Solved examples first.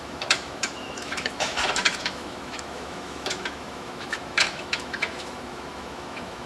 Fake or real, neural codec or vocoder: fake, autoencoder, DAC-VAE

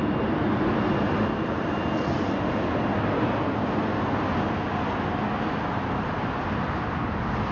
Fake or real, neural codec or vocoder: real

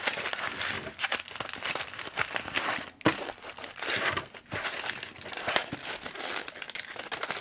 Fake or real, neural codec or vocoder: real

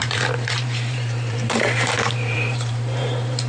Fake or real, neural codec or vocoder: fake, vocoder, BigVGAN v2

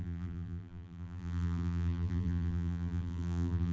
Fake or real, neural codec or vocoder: fake, vocoder, BigVGAN v2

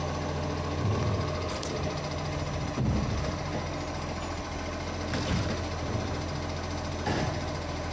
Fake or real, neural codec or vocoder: real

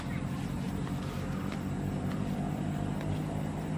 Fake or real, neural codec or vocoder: fake, vocoder, BigVGAN v2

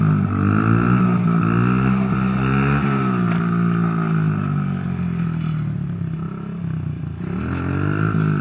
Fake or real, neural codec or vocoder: real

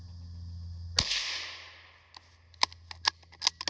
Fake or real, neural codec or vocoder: real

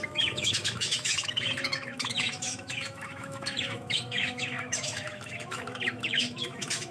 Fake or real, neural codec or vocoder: fake, autoencoder, DAC-VAE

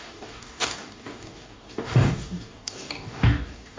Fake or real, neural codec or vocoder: fake, codec, DAC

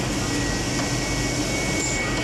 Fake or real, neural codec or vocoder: real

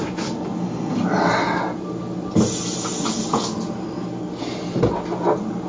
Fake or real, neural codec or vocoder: real